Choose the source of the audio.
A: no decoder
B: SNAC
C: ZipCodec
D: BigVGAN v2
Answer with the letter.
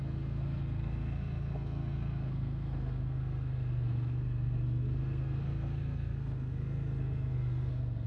B